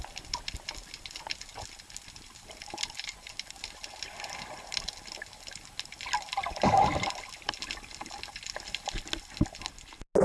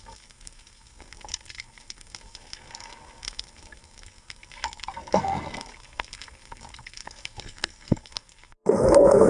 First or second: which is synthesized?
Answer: second